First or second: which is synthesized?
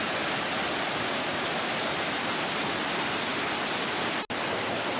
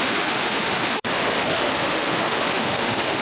second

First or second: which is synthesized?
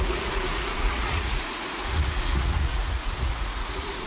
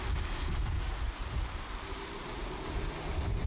first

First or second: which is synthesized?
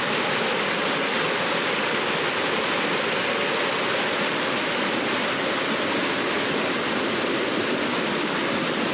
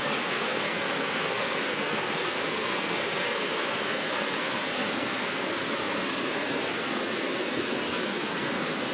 second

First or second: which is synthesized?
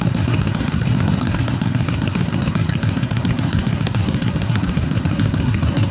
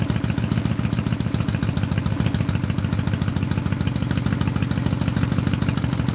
first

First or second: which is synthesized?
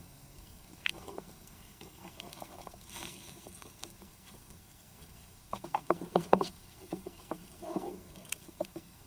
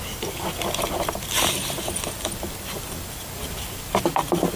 first